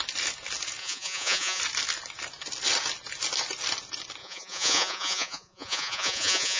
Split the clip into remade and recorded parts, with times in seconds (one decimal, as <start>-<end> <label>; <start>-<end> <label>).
0.0-0.8 recorded; 0.8-1.6 remade; 1.6-4.2 recorded; 4.2-6.6 remade